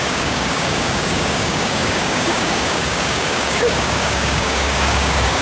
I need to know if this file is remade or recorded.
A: remade